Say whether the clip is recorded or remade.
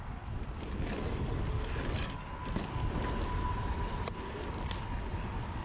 recorded